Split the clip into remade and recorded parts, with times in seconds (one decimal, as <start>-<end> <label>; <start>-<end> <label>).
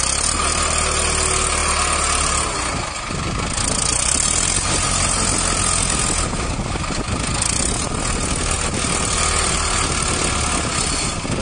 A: 0.0-11.4 recorded